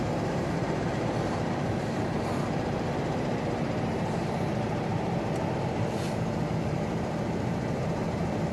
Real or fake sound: fake